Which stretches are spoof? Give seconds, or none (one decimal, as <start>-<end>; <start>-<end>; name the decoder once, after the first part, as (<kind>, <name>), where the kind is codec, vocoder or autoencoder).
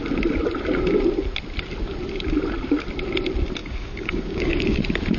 3.6-4.8 (codec, DAC)